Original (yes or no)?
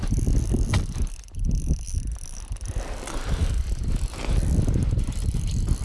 yes